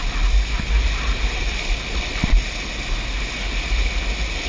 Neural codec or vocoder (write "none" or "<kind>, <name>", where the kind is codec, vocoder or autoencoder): none